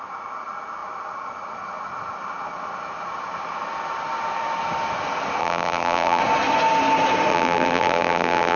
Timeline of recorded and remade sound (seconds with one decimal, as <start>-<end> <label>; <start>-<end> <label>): 0.0-5.4 recorded; 5.4-6.2 remade; 6.2-7.3 recorded; 7.3-8.6 remade